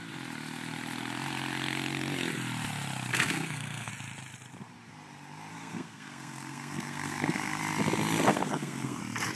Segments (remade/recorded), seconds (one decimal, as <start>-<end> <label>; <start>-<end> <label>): 0.0-3.1 recorded; 3.1-3.9 remade; 3.9-5.5 recorded; 5.5-7.6 remade; 7.6-8.3 recorded; 8.3-9.0 remade; 9.0-9.4 recorded